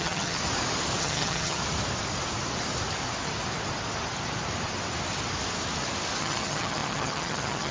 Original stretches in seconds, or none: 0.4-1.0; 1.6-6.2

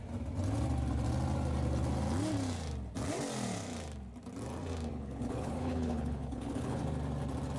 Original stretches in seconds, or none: 0.0-4.9; 6.8-7.6

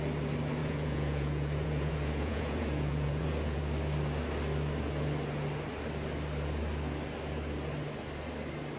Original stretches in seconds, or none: 0.0-0.6; 3.6-8.8

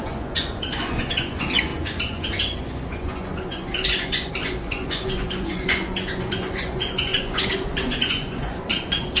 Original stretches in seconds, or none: none